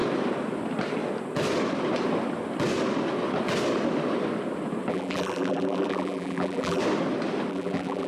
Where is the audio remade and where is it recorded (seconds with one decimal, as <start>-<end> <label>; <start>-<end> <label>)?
0.0-4.9 recorded; 4.9-6.8 remade; 6.8-7.5 recorded; 7.5-8.1 remade